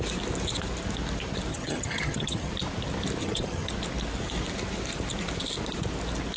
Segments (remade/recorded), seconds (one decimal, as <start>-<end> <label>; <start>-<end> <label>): 0.0-1.5 recorded; 1.5-2.5 remade; 2.5-3.2 recorded; 3.2-3.7 remade; 3.7-6.4 recorded